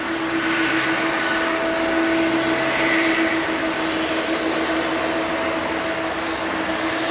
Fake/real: real